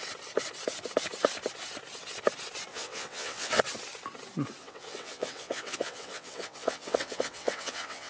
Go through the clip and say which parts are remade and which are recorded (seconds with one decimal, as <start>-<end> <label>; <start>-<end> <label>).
0.0-2.7 recorded; 2.7-3.6 remade; 3.6-4.6 recorded; 4.6-8.1 remade